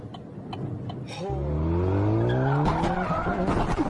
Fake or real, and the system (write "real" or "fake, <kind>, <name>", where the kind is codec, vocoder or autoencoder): real